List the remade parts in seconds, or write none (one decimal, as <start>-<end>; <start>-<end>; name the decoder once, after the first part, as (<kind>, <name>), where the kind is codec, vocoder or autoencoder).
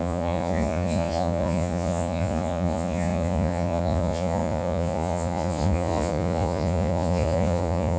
0.0-8.0 (vocoder, Vocos)